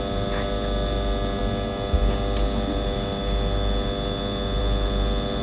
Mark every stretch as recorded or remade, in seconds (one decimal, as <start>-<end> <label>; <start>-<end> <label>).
0.0-5.4 recorded